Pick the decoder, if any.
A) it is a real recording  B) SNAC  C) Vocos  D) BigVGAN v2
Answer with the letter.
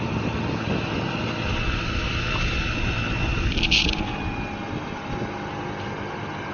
A